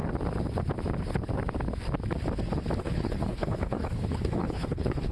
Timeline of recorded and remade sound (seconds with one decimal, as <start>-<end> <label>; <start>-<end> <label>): 0.0-2.8 recorded; 2.8-5.1 remade